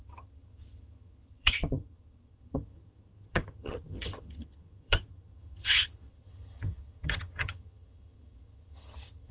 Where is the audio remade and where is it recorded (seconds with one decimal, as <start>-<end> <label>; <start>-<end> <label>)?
0.0-9.3 remade